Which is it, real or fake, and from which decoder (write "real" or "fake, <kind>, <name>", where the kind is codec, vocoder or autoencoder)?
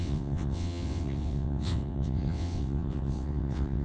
fake, vocoder, WaveNeXt